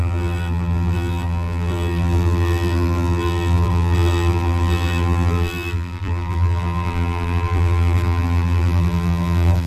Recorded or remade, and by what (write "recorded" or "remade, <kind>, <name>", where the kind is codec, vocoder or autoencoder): remade, vocoder, BigVGAN v2